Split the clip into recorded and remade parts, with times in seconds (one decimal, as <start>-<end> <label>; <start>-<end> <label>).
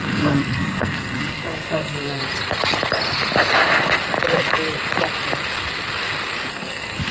0.0-2.2 remade; 2.2-6.5 recorded; 6.5-7.1 remade